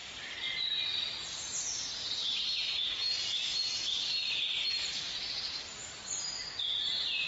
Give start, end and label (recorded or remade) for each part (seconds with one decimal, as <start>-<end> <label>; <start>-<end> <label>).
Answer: 0.0-1.9 recorded; 1.9-7.3 remade